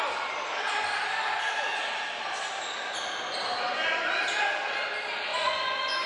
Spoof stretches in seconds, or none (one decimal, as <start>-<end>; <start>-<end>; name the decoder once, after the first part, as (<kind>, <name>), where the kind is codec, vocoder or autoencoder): 5.3-6.1 (vocoder, Vocos)